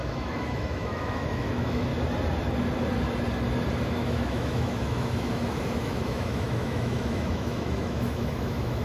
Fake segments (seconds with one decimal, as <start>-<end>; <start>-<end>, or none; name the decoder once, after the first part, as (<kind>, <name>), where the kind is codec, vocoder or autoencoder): 0.0-1.9 (autoencoder, DAC-VAE); 3.8-8.8